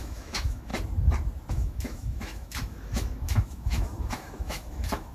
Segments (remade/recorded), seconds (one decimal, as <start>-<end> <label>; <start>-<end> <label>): 0.0-0.7 remade; 0.7-1.5 recorded; 1.5-5.1 remade